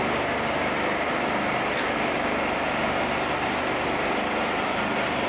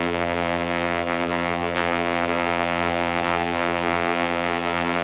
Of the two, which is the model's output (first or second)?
second